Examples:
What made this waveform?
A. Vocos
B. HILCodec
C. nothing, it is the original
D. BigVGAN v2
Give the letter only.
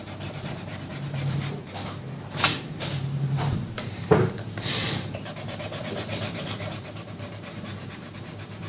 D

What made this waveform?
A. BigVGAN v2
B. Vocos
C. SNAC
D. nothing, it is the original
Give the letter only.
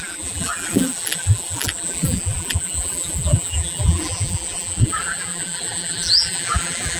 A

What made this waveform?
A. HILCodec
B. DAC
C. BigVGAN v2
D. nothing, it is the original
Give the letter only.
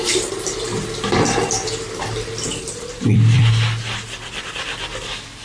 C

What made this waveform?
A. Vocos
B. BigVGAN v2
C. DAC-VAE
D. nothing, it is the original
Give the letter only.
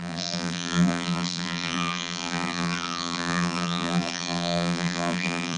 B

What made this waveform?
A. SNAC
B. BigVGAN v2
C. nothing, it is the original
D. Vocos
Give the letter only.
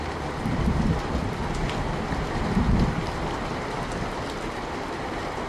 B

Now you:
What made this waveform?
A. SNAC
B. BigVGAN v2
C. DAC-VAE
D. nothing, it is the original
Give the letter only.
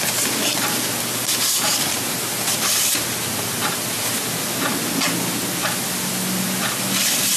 D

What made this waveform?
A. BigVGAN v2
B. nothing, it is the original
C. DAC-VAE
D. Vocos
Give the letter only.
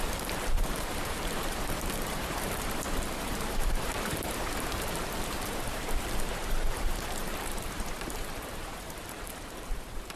A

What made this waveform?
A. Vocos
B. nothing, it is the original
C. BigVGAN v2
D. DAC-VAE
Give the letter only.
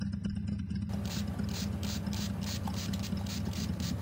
B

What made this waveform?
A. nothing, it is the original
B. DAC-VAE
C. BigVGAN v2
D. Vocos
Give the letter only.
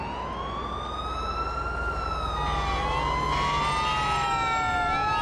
A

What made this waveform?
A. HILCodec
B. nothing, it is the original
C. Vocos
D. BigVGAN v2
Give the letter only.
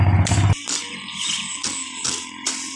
B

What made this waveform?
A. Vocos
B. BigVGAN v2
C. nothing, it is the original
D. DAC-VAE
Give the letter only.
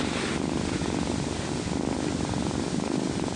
C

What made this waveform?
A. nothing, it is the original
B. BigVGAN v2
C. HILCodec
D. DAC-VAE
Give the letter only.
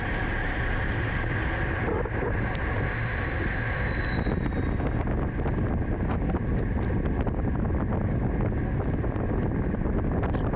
A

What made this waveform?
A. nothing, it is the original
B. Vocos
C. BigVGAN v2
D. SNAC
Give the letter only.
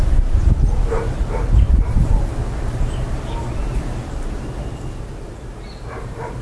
C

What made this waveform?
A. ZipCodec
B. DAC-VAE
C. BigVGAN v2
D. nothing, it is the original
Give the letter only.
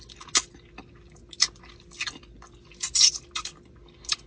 D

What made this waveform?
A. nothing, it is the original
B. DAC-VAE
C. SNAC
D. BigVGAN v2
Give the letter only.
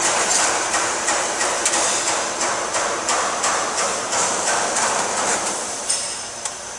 D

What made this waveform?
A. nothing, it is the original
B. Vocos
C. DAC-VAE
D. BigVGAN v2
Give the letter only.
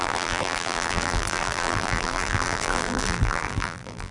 D